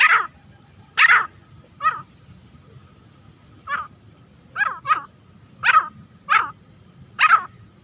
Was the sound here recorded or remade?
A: recorded